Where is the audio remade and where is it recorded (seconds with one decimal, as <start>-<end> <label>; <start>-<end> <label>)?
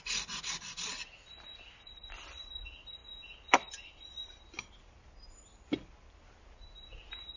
0.0-7.4 recorded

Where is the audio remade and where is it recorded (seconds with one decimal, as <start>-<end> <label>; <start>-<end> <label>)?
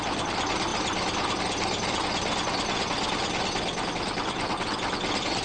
0.0-5.4 recorded